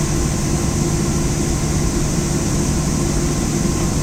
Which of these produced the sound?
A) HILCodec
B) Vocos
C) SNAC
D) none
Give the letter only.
D